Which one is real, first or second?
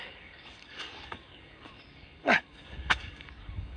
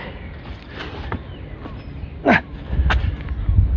second